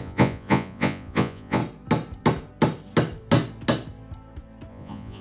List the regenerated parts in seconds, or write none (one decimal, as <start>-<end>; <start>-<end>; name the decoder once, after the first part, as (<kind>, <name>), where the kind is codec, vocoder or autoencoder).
0.0-1.6 (vocoder, Vocos); 4.7-5.2